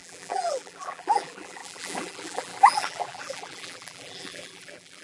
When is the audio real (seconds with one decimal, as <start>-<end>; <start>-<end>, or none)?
none